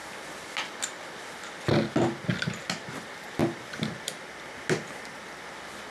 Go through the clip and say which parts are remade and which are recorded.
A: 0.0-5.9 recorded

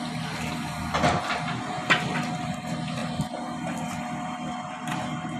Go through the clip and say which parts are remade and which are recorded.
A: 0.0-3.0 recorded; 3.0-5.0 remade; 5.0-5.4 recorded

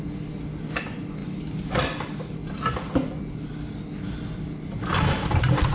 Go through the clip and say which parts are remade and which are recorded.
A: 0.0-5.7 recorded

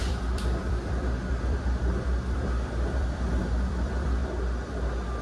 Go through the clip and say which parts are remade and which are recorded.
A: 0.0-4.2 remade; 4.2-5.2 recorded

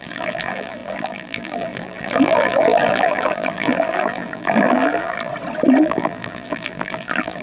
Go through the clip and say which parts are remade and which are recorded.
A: 0.0-5.3 remade; 5.3-5.8 recorded; 5.8-7.4 remade

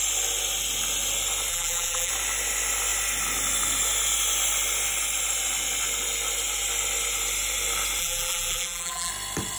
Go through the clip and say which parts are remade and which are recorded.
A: 0.0-1.5 recorded; 1.5-2.1 remade; 2.1-8.0 recorded; 8.0-9.1 remade; 9.1-9.6 recorded

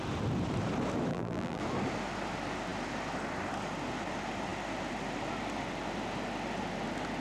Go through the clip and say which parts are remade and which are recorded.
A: 0.0-1.1 recorded; 1.1-1.6 remade; 1.6-7.2 recorded

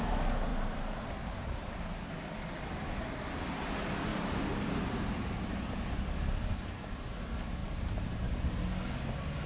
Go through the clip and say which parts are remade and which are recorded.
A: 0.0-0.5 recorded; 0.5-1.2 remade; 1.2-4.1 recorded; 4.1-5.9 remade; 5.9-7.6 recorded; 7.6-8.6 remade; 8.6-9.5 recorded